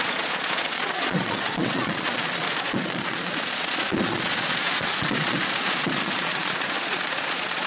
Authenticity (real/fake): fake